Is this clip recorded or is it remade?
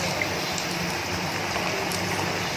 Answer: remade